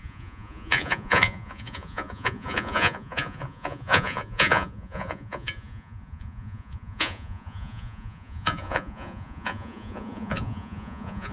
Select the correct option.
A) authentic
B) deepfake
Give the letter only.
B